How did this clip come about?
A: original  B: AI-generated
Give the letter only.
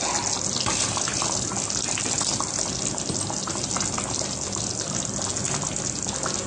A